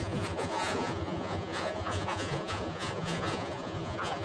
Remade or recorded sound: remade